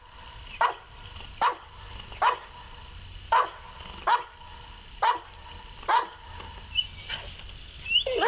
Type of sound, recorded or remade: recorded